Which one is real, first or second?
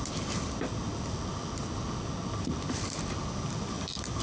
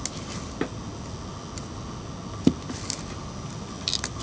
second